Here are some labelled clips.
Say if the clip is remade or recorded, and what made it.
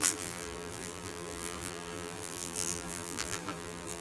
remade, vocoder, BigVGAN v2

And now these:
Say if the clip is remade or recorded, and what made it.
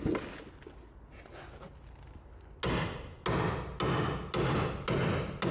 recorded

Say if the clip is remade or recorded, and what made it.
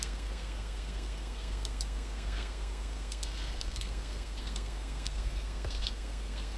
remade, codec, SNAC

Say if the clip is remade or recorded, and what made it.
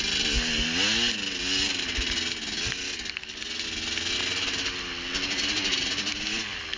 recorded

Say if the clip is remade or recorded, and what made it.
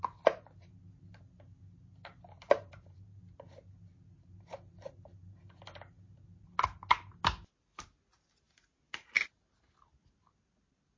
recorded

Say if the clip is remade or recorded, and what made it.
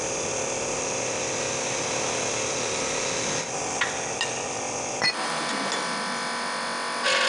recorded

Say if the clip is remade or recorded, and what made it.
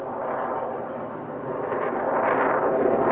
remade, vocoder, BigVGAN v2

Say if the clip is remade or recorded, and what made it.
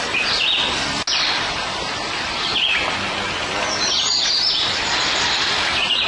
recorded